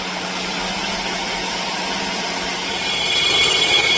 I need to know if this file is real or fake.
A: real